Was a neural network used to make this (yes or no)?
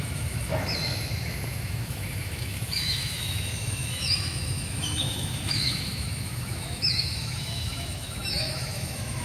yes